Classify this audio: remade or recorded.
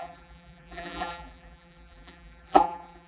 remade